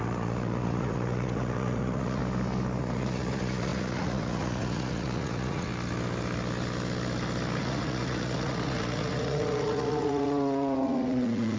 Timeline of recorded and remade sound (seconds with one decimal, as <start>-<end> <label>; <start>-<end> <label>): 0.0-2.2 remade; 2.2-2.8 recorded; 2.8-5.7 remade; 5.7-7.6 recorded; 7.6-11.6 remade